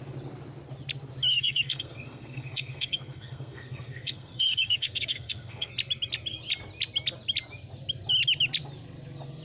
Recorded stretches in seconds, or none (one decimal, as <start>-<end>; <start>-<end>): 0.0-1.3; 5.7-9.4